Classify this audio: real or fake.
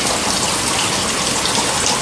real